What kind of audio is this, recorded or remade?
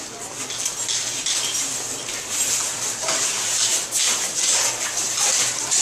recorded